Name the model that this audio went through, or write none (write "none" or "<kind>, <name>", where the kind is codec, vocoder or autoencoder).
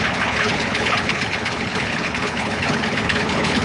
codec, HILCodec